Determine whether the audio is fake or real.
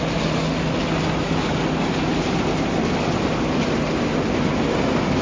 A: real